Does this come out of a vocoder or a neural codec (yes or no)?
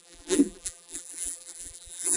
yes